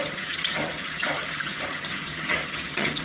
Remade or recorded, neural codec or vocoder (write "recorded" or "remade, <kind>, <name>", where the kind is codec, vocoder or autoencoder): remade, vocoder, HiFi-GAN